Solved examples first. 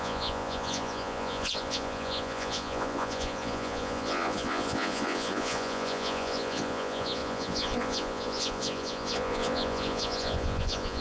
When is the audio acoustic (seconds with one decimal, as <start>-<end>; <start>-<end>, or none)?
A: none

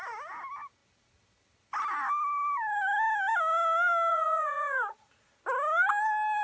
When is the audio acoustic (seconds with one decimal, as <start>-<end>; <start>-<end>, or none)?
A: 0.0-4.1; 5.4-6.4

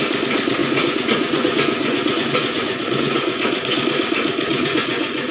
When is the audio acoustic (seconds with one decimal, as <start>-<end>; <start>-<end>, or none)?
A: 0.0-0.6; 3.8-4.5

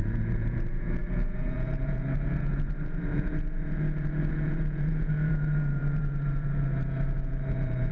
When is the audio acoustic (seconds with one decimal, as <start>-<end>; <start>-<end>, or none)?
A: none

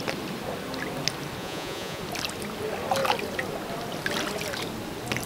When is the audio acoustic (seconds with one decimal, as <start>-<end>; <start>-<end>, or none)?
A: 0.0-1.4; 2.0-5.3

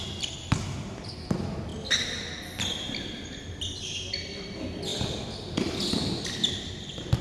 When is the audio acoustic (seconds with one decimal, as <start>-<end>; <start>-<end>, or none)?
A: 0.0-7.2